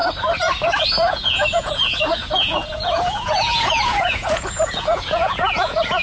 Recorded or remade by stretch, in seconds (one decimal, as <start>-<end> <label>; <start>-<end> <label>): 0.0-1.1 recorded; 1.1-6.0 remade